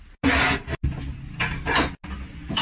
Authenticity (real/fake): real